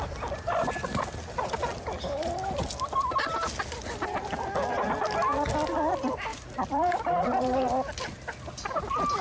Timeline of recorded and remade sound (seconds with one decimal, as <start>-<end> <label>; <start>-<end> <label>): 0.0-6.3 recorded; 6.3-7.7 remade; 7.7-9.2 recorded